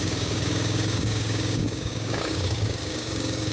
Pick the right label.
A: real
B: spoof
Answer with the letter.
B